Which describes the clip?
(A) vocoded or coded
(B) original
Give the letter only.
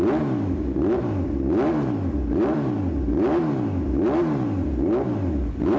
B